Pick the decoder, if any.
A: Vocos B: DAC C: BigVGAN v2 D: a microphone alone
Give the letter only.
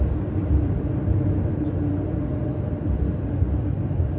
D